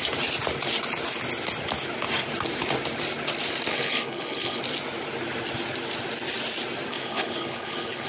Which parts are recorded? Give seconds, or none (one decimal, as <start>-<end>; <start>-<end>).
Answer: 0.0-3.7; 4.6-6.9